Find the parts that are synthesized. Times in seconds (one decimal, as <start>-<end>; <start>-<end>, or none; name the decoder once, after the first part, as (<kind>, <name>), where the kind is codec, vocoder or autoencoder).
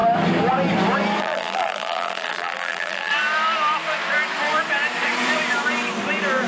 1.2-3.1 (vocoder, BigVGAN v2)